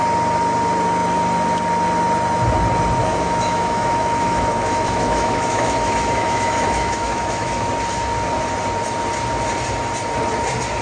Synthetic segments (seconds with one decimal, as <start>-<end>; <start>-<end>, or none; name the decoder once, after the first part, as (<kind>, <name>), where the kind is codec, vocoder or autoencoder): 3.0-7.7 (autoencoder, DAC-VAE)